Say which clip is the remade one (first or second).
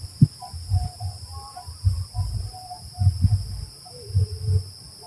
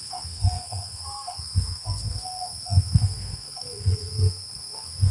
second